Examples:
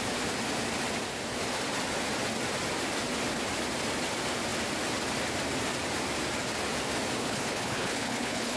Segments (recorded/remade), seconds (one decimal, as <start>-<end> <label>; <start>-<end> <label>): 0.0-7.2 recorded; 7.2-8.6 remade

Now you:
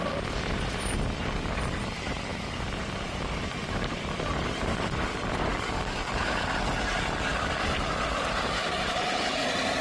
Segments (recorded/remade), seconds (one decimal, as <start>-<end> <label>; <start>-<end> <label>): 0.0-5.5 remade; 5.5-7.6 recorded; 7.6-9.8 remade

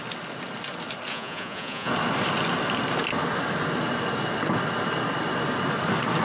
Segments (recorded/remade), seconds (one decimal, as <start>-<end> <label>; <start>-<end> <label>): 0.0-1.1 recorded; 1.1-1.9 remade; 1.9-6.2 recorded